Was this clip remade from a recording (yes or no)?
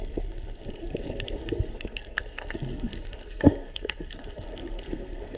yes